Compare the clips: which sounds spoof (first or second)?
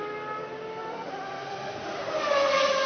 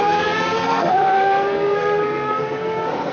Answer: second